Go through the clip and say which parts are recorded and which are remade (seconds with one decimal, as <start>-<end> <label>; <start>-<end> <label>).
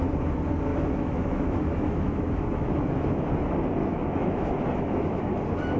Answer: 0.0-0.7 recorded; 0.7-3.3 remade; 3.3-3.8 recorded; 3.8-5.2 remade; 5.2-5.8 recorded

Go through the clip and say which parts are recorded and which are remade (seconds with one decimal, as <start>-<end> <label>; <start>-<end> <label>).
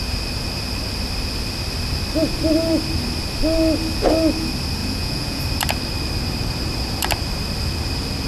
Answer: 0.0-4.8 recorded; 4.8-5.4 remade; 5.4-8.3 recorded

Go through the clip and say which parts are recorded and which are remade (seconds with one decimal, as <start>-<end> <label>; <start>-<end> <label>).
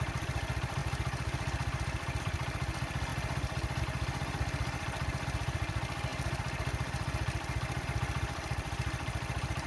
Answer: 0.0-0.8 remade; 0.8-2.2 recorded; 2.2-3.1 remade; 3.1-3.8 recorded; 3.8-6.1 remade; 6.1-7.8 recorded; 7.8-9.7 remade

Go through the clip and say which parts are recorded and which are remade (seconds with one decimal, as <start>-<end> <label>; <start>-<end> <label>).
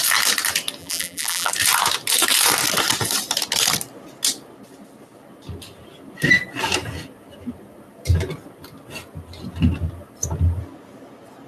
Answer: 0.0-0.8 recorded; 0.8-1.5 remade; 1.5-11.5 recorded